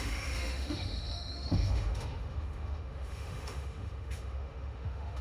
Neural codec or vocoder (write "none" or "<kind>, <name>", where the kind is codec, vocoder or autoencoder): autoencoder, DAC-VAE